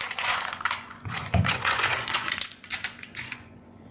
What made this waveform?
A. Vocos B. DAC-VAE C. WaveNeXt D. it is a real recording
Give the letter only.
A